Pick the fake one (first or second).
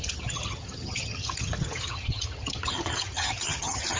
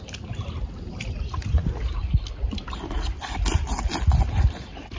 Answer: first